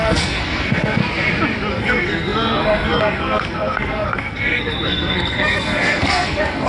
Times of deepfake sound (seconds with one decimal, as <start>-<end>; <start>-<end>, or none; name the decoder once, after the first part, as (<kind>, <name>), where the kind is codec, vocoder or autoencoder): 0.0-1.0 (codec, SNAC); 1.7-6.7